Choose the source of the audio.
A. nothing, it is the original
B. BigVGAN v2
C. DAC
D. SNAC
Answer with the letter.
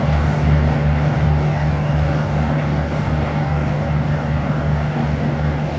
C